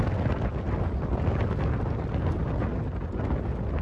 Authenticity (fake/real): real